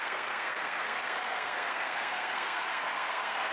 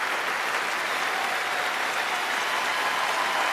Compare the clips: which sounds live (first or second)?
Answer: second